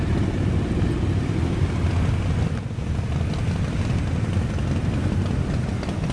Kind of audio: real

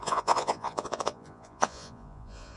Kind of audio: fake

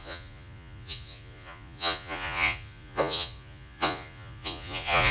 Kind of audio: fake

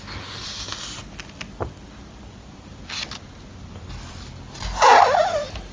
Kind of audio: real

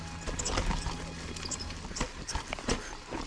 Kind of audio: real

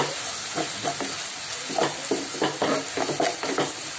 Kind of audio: real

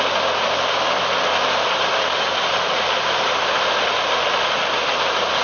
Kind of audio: real